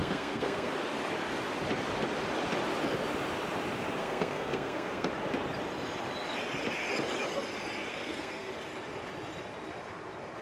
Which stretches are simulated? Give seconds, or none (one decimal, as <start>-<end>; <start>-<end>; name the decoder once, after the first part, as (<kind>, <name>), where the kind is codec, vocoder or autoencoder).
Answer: 0.0-0.7 (codec, SNAC); 4.0-5.1; 7.9-8.5

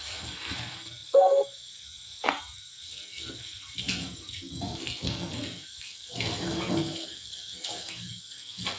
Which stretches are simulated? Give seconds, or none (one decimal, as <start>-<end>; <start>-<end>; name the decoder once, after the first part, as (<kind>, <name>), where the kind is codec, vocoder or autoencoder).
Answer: 0.0-8.8 (codec, SNAC)

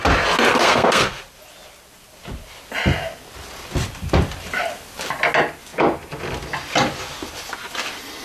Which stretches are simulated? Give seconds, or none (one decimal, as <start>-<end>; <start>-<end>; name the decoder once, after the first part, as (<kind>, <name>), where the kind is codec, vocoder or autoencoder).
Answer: 0.5-1.2 (codec, SNAC)

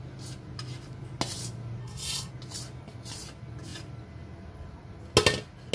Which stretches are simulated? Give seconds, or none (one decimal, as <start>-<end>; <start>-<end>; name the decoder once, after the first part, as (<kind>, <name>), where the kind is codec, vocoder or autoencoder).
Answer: 1.8-2.3 (codec, SNAC)

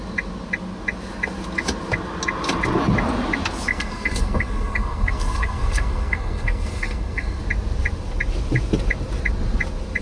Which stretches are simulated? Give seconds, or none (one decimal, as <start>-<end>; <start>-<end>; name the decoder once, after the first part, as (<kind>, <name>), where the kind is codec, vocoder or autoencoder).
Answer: 3.7-7.4 (codec, SNAC)